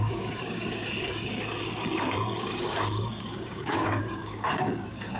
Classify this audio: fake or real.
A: fake